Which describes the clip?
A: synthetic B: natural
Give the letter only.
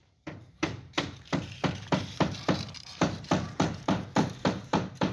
A